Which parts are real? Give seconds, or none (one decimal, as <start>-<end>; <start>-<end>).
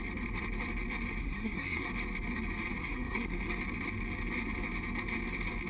0.0-1.2; 1.9-2.8; 3.4-5.7